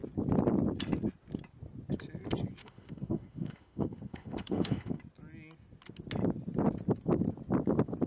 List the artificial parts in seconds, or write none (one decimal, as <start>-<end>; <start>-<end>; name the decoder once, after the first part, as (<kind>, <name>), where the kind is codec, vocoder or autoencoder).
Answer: 2.6-5.0 (autoencoder, DAC-VAE)